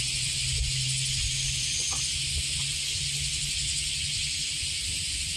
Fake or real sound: real